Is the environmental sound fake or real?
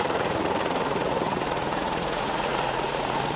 fake